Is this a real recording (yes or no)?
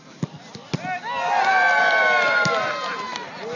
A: yes